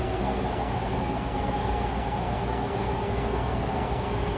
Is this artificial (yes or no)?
yes